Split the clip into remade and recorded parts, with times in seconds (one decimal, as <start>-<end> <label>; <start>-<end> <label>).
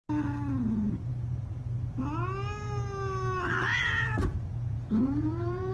0.0-3.7 recorded; 3.7-5.7 remade